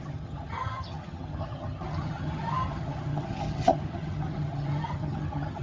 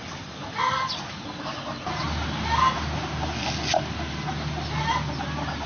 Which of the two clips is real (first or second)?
second